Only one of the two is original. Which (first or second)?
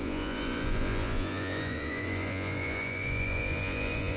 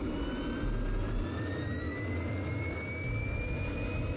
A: second